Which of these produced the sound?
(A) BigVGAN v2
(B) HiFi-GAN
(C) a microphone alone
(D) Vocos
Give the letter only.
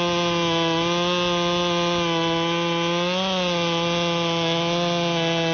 C